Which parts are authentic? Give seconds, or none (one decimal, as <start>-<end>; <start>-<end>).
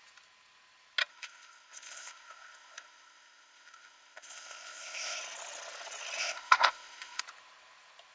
0.0-1.1; 5.2-6.2; 7.2-8.1